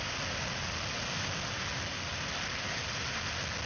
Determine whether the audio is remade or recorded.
recorded